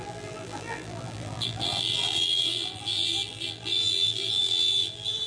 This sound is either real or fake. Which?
fake